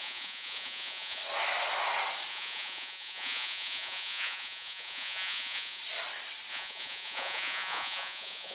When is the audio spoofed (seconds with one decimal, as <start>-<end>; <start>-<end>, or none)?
0.0-1.2; 2.3-5.8; 6.5-8.5